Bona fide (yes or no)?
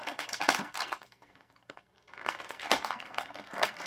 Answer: no